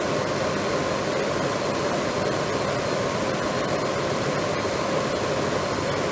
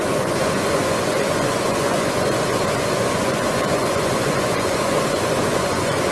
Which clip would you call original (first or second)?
first